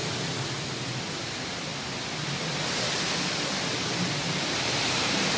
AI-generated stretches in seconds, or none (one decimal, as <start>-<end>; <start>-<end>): 1.1-1.7; 4.1-5.4